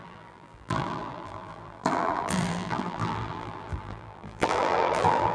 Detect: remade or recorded remade